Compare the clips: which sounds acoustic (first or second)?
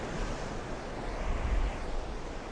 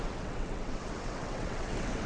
first